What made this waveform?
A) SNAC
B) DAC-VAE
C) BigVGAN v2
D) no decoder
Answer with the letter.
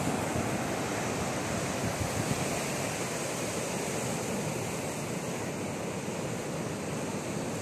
D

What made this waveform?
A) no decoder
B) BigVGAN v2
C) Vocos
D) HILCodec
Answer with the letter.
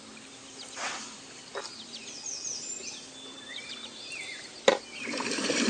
B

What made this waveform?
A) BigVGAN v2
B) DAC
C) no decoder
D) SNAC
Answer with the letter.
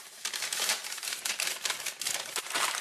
A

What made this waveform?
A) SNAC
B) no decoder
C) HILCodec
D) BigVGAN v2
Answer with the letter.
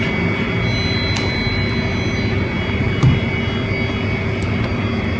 B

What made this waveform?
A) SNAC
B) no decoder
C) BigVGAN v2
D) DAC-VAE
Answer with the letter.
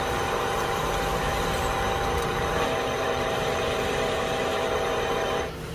C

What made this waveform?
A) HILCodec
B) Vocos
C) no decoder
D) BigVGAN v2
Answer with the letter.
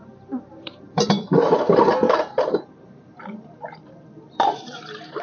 D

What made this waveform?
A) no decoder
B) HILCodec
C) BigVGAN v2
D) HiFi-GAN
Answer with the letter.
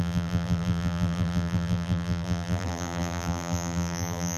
C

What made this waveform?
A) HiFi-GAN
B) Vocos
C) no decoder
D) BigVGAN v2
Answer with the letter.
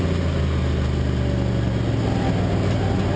C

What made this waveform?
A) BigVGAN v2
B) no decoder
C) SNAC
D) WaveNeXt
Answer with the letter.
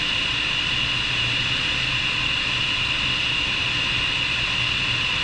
B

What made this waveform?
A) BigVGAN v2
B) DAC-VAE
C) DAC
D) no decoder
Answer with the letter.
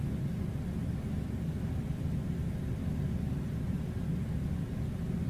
D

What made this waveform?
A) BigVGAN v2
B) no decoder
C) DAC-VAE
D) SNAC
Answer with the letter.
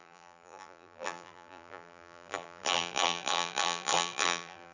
A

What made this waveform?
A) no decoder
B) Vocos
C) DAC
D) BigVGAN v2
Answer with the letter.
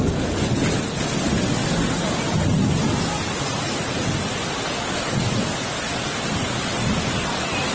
A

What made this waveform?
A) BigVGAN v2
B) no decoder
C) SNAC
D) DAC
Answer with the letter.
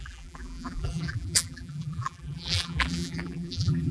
A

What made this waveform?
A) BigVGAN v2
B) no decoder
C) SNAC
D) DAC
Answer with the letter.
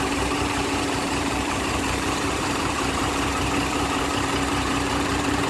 A